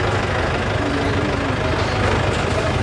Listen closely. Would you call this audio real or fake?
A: real